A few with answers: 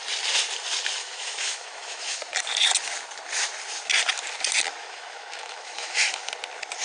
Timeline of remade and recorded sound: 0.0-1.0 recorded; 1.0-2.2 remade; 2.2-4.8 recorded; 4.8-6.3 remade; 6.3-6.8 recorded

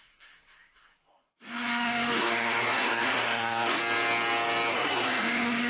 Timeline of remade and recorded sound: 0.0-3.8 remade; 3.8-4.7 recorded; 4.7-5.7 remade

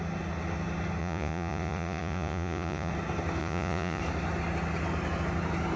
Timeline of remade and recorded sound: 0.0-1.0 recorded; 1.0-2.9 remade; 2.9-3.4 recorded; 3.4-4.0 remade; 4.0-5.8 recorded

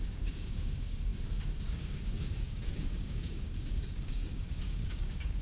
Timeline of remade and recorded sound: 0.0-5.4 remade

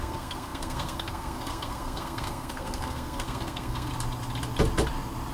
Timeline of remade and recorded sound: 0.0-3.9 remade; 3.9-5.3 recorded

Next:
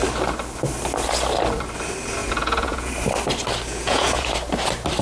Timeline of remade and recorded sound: 0.0-2.2 recorded; 2.2-2.9 remade; 2.9-3.7 recorded; 3.7-4.3 remade; 4.3-5.0 recorded

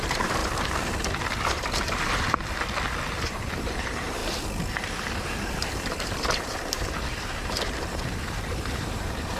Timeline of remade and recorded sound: 0.0-0.4 remade; 0.4-3.2 recorded; 3.2-4.2 remade; 4.2-4.7 recorded; 4.7-9.4 remade